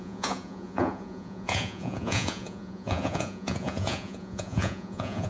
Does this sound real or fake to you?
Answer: fake